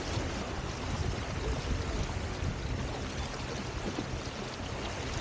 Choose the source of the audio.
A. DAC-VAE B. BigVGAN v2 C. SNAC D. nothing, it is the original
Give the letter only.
D